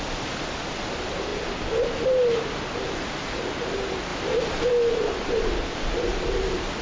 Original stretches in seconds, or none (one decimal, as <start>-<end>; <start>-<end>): 0.0-6.1

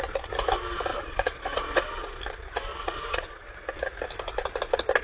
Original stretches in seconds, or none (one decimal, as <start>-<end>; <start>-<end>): 0.0-0.9; 2.2-2.7; 3.5-5.0

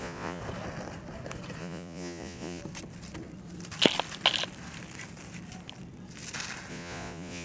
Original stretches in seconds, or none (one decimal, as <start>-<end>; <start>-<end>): 0.4-1.6; 2.6-6.7

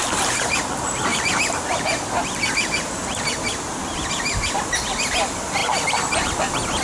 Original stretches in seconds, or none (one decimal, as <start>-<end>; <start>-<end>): 0.6-1.1; 4.1-6.8

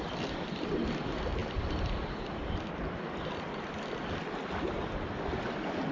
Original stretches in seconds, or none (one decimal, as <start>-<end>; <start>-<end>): 0.0-5.9

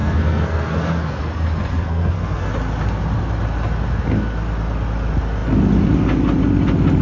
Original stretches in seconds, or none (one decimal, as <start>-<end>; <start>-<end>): 1.2-1.7; 2.5-7.0

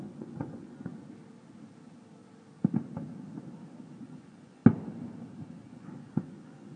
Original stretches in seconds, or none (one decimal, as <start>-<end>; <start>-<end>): 0.9-4.0; 4.6-5.7

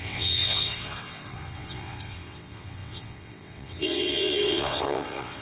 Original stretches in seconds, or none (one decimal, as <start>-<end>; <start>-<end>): none